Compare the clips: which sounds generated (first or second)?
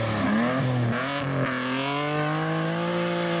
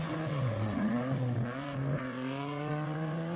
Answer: second